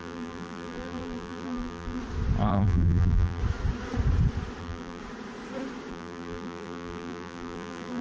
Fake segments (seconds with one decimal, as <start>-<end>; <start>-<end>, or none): 0.0-2.0; 2.5-3.4; 4.6-5.0; 5.9-8.0